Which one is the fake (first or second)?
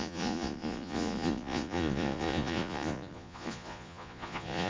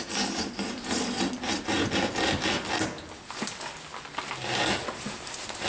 first